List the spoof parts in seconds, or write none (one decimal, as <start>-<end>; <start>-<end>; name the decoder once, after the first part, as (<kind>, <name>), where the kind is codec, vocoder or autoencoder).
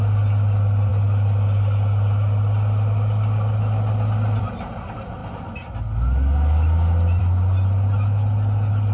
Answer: none